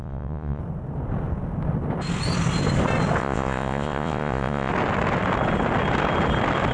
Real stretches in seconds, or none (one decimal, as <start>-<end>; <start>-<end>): 0.6-3.2; 4.7-6.7